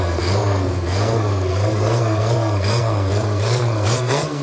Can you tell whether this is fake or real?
fake